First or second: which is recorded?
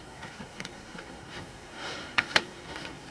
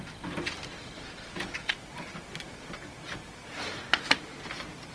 second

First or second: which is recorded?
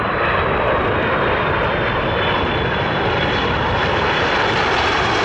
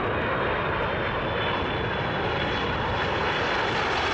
second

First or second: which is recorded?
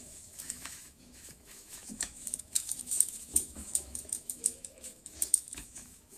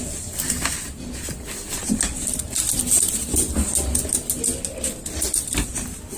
second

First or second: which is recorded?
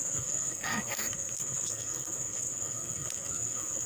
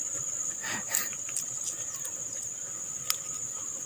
second